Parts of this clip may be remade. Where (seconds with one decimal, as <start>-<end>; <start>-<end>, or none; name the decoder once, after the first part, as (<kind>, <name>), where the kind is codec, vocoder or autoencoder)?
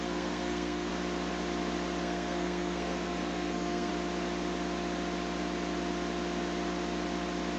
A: 0.0-0.9 (codec, SNAC); 2.0-3.9